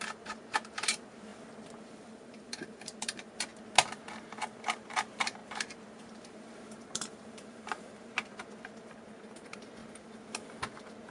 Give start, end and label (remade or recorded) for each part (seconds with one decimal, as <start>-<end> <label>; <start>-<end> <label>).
0.0-1.3 remade; 1.3-1.8 recorded; 1.8-3.5 remade; 3.5-4.1 recorded; 4.1-9.8 remade; 9.8-11.1 recorded